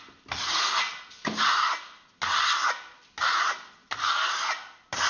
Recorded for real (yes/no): yes